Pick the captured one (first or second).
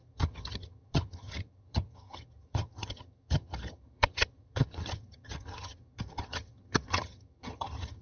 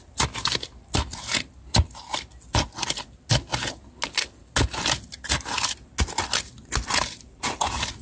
second